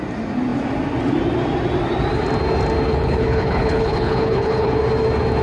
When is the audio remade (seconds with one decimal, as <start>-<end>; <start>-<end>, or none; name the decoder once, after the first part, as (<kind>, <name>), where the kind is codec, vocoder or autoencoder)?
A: 2.9-4.8 (codec, HILCodec)